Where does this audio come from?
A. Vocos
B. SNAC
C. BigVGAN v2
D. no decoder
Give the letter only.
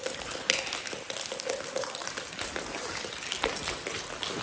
D